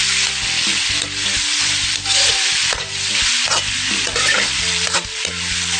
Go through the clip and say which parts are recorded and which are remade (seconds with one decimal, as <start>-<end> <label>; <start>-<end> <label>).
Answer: 0.0-1.4 recorded; 1.4-4.9 remade; 4.9-5.8 recorded